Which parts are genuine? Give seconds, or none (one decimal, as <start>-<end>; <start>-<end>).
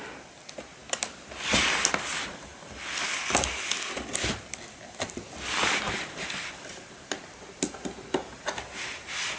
0.0-9.4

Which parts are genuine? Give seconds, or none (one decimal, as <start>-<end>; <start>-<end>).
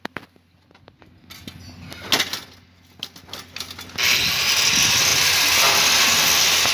0.0-6.7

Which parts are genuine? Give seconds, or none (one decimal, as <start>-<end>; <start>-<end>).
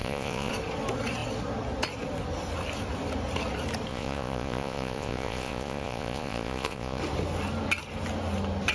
0.5-3.9; 7.0-8.7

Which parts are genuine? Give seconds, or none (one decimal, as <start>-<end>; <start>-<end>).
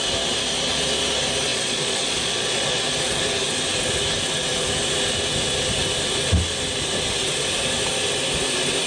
0.0-1.5; 3.2-8.9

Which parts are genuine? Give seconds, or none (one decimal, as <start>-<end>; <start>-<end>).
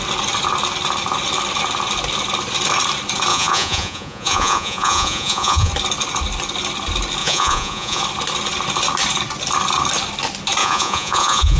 0.0-3.3; 5.7-7.2; 8.0-10.6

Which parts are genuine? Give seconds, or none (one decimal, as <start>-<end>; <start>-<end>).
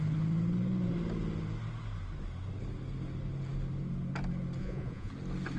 0.0-4.6; 5.1-5.6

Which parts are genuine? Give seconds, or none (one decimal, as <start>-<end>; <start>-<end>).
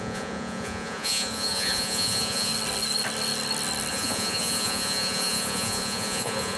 2.5-3.9